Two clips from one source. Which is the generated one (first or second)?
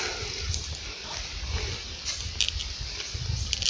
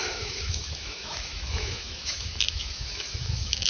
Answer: second